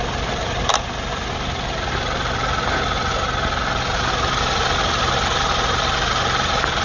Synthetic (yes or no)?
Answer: no